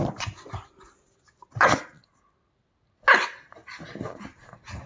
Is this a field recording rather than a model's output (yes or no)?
yes